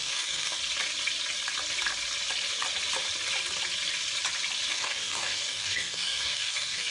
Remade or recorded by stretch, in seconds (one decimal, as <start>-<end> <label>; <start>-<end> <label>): 0.0-0.6 remade; 0.6-4.7 recorded; 4.7-6.9 remade